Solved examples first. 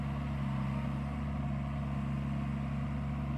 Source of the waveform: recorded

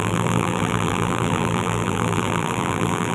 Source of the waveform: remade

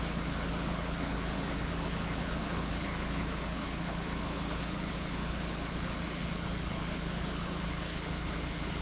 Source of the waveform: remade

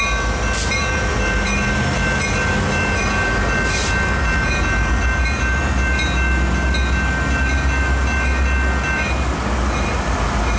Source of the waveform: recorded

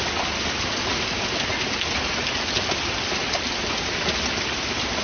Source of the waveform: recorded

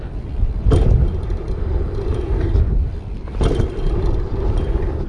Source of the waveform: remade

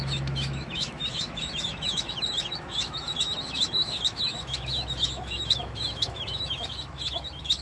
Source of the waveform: remade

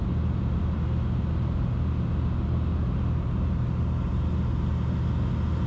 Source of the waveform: recorded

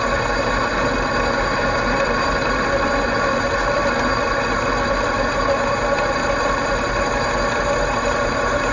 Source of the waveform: recorded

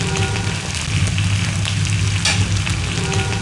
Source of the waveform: recorded